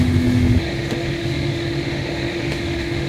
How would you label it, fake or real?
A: fake